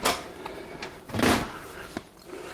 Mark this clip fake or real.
real